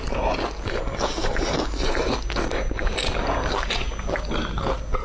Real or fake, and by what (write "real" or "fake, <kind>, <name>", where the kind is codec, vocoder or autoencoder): real